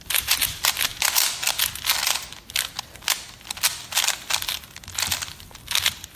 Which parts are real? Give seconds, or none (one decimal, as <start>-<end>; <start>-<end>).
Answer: 0.0-6.2